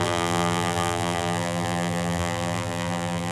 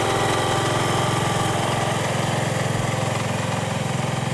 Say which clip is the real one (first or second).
second